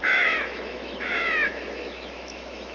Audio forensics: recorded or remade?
remade